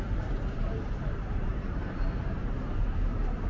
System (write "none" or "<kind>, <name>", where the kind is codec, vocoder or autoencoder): vocoder, BigVGAN v2